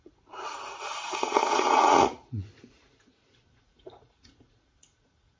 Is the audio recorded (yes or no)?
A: no